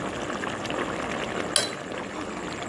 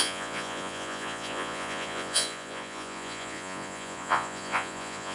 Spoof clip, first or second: second